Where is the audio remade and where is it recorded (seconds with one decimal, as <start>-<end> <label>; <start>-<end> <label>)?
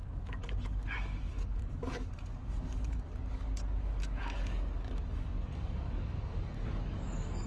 0.0-7.5 remade